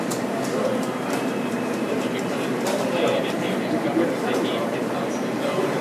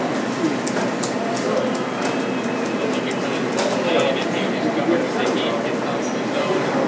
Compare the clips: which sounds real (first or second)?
second